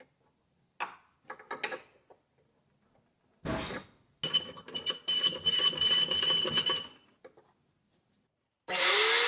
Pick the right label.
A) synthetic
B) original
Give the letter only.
B